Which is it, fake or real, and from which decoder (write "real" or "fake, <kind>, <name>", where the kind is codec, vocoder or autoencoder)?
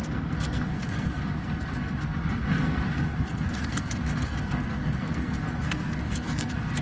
fake, codec, SNAC